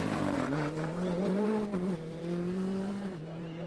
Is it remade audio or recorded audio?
remade